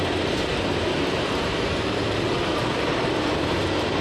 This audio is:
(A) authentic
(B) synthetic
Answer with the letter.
B